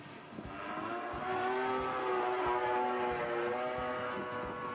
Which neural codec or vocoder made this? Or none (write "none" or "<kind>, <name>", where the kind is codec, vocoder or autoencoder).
none